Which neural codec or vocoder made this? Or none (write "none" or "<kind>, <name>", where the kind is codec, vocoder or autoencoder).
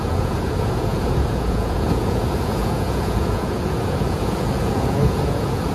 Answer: vocoder, Vocos